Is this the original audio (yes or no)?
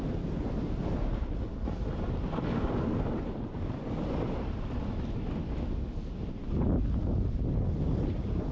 yes